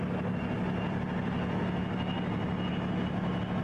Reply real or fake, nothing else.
real